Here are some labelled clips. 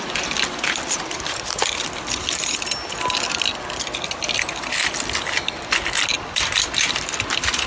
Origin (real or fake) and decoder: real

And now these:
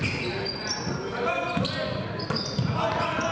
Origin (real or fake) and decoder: real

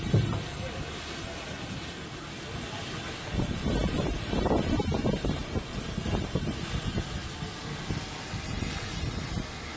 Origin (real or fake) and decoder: real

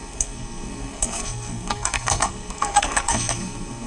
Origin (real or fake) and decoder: fake, codec, SNAC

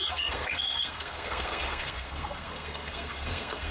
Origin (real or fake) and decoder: fake, codec, SNAC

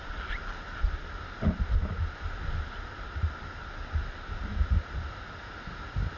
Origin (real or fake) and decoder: real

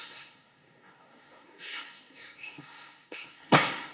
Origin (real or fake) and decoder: fake, codec, SNAC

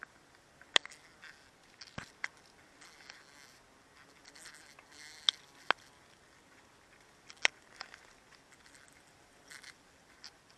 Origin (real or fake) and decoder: real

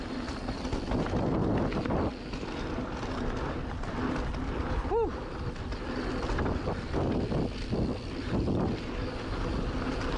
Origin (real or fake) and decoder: real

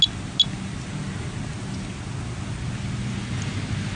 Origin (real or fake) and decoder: real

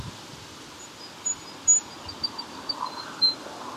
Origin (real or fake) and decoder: real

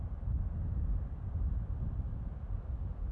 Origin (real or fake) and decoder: real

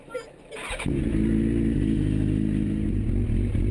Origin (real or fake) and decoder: real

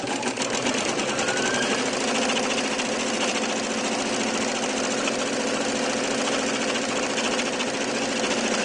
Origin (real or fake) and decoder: real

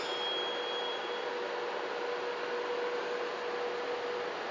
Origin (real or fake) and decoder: real